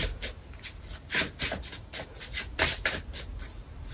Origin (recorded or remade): recorded